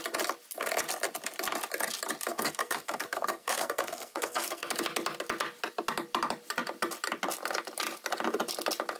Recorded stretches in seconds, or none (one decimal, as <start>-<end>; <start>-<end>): 0.0-2.3; 4.7-9.0